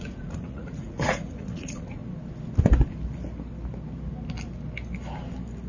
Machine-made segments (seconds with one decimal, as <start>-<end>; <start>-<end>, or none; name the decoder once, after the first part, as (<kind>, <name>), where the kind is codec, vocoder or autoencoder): 0.0-2.0 (vocoder, Vocos)